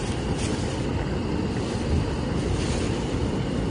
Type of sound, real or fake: real